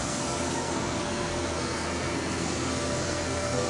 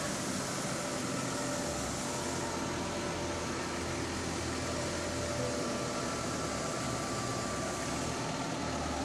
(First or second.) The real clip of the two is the second